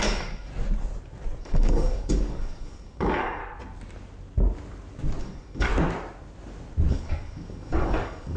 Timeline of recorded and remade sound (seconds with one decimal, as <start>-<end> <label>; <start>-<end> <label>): 0.0-0.5 remade; 0.5-1.4 recorded; 1.4-3.4 remade; 3.4-5.2 recorded; 5.2-5.7 remade; 5.7-6.9 recorded; 6.9-8.4 remade